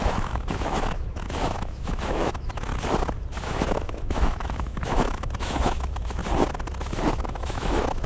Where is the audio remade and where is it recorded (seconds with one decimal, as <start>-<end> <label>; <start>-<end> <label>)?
0.0-2.7 remade; 2.7-3.4 recorded; 3.4-6.2 remade; 6.2-7.2 recorded; 7.2-8.1 remade